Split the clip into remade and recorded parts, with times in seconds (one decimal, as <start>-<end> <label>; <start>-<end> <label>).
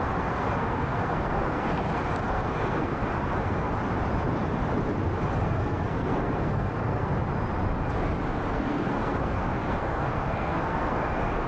0.0-3.7 remade; 3.7-5.4 recorded; 5.4-7.1 remade; 7.1-8.5 recorded; 8.5-11.5 remade